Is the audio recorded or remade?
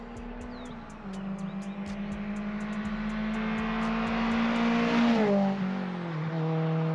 recorded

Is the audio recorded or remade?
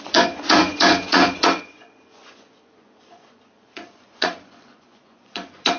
remade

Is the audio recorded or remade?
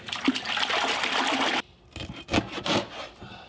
recorded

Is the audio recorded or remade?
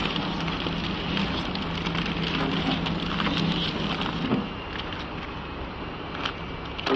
recorded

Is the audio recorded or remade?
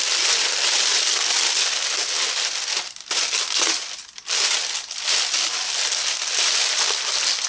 recorded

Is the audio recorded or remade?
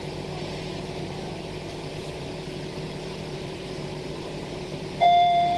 remade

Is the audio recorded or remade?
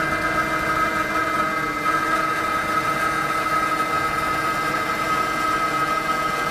recorded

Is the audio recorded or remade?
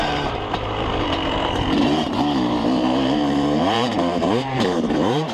remade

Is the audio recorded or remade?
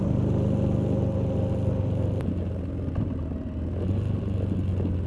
recorded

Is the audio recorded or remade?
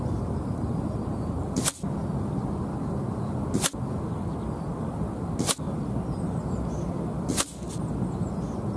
recorded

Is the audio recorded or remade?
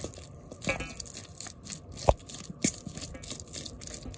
recorded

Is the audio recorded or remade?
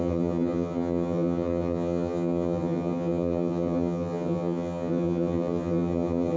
remade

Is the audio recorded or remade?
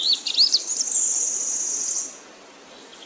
recorded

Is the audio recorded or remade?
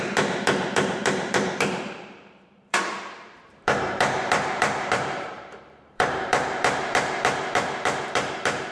remade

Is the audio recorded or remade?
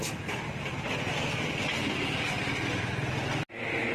recorded